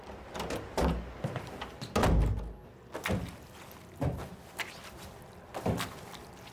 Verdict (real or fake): real